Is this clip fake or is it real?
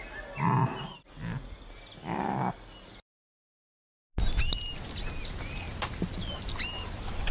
real